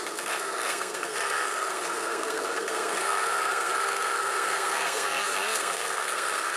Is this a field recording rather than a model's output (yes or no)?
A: no